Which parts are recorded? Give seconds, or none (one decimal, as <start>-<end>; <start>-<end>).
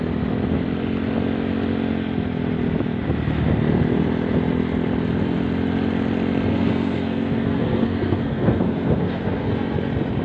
0.0-6.5; 9.5-10.2